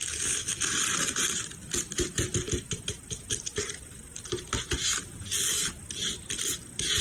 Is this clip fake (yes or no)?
no